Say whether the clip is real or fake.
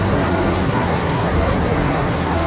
fake